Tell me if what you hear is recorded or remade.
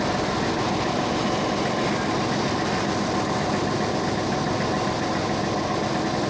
recorded